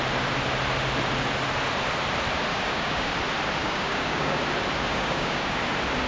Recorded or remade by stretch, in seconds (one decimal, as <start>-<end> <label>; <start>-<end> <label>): 0.0-2.5 recorded; 2.5-3.1 remade; 3.1-3.6 recorded; 3.6-4.4 remade; 4.4-4.9 recorded; 4.9-5.6 remade; 5.6-6.1 recorded